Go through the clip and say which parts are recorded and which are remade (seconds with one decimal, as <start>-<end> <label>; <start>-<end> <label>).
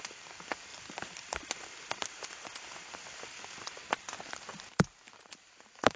0.0-6.0 recorded